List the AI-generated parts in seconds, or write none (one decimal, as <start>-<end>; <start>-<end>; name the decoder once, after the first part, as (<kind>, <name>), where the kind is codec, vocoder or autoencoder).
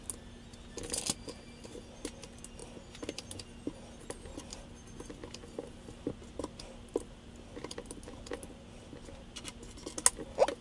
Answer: none